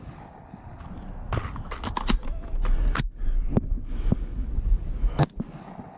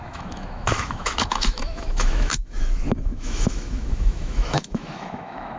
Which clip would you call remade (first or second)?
second